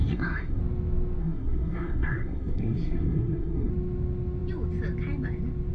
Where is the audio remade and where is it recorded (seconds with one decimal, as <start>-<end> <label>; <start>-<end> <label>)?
0.0-0.6 remade; 0.6-1.2 recorded; 1.2-3.7 remade; 3.7-5.7 recorded